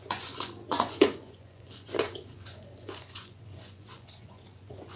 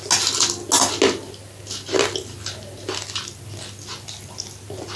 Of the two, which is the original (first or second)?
second